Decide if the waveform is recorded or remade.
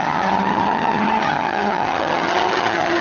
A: remade